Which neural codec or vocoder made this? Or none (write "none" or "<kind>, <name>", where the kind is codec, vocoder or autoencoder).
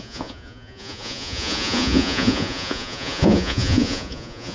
vocoder, Vocos